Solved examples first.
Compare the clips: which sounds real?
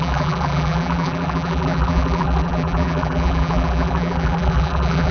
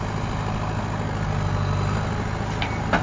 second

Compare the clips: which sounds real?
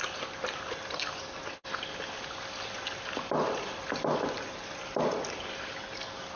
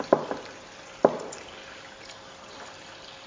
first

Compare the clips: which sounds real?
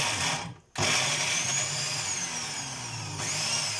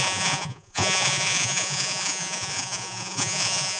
first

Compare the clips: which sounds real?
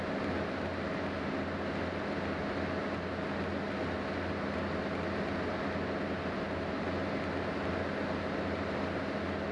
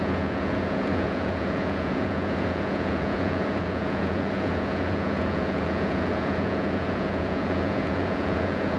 first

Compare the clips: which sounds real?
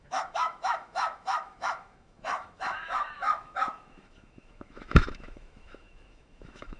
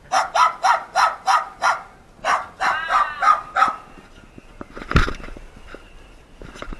second